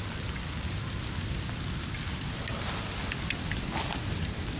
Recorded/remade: recorded